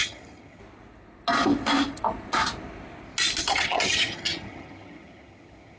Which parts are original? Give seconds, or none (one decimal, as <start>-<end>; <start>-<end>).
0.6-3.4